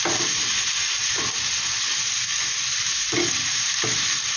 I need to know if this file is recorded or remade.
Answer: recorded